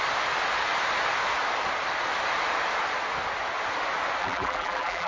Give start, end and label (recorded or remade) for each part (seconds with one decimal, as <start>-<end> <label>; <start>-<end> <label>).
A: 0.0-4.2 recorded; 4.2-5.1 remade